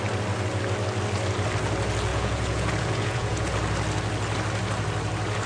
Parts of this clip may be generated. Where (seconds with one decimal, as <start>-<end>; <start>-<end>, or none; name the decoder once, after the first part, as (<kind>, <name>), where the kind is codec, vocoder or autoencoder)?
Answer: 2.1-3.5 (vocoder, Vocos)